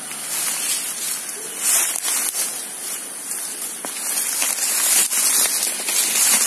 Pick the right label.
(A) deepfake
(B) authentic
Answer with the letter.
B